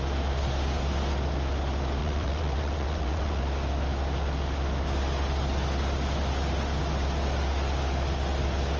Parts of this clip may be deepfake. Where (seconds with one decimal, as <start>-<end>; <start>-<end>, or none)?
2.0-3.4